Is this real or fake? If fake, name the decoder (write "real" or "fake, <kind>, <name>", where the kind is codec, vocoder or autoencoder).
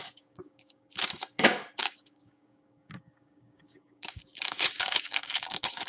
fake, codec, DAC